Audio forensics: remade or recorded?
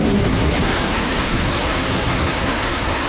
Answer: remade